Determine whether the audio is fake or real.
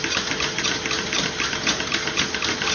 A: real